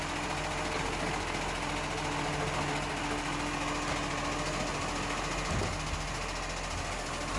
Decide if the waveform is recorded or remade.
recorded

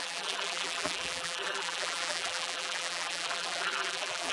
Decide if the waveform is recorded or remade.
remade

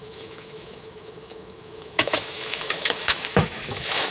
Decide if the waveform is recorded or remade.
remade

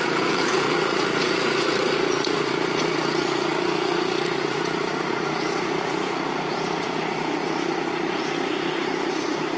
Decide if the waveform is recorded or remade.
remade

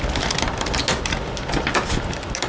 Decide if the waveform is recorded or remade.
recorded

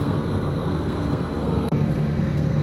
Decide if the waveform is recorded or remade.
remade